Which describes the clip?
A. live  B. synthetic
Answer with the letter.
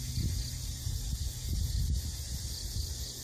A